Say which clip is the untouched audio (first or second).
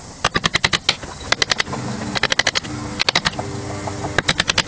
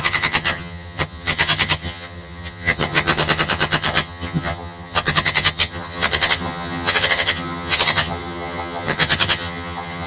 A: first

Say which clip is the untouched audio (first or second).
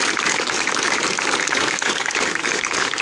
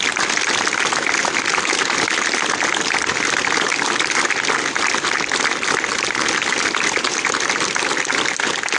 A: second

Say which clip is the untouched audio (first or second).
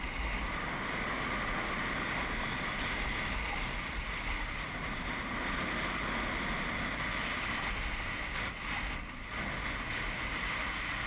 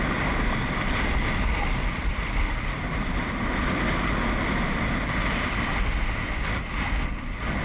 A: first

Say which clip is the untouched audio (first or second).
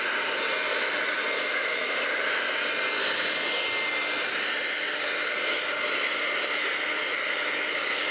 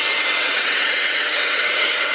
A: first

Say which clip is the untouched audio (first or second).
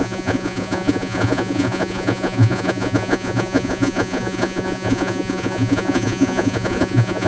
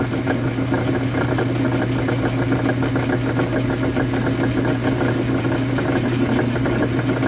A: second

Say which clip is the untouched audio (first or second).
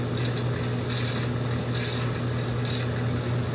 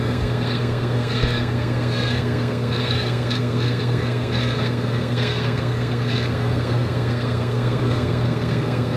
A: first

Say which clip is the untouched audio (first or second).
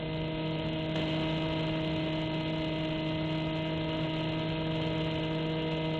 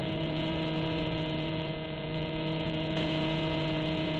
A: first